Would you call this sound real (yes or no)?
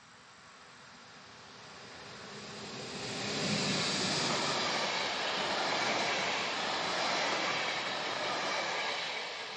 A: yes